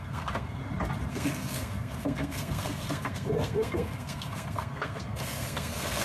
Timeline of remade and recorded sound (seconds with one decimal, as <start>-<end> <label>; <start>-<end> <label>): 0.0-0.6 remade; 0.6-1.1 recorded; 1.1-6.0 remade